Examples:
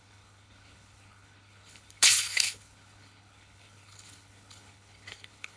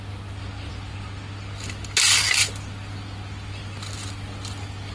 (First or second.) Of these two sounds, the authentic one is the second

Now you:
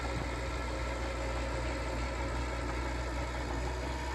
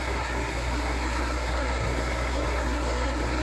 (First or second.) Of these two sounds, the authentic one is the first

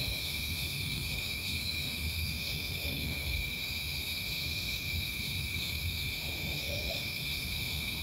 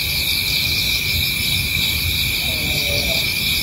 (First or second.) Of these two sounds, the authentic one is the second